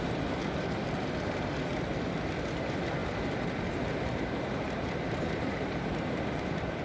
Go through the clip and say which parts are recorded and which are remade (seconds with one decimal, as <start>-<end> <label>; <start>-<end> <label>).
0.0-0.4 remade; 0.4-2.6 recorded; 2.6-6.8 remade